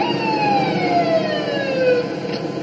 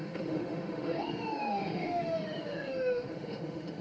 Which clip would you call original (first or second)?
first